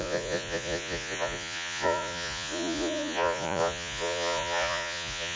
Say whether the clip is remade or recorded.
remade